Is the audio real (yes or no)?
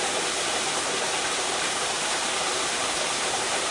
no